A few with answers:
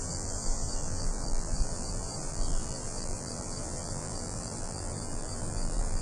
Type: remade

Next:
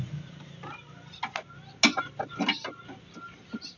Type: recorded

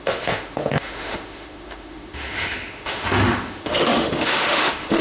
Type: remade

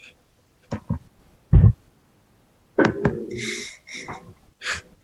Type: recorded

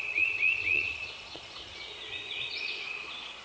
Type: remade